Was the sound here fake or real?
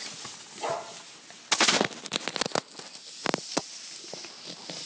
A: real